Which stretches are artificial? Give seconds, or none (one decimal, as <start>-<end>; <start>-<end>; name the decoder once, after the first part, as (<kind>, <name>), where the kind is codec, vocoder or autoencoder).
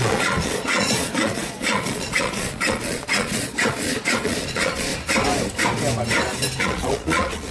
0.0-4.9 (vocoder, Vocos); 6.6-7.5